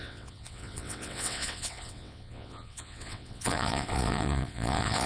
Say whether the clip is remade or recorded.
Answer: remade